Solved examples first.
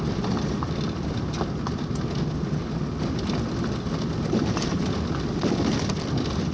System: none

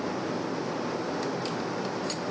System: none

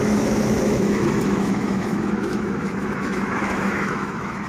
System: autoencoder, DAC-VAE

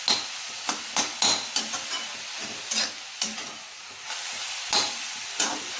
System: none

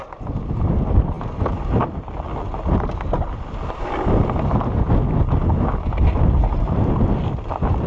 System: none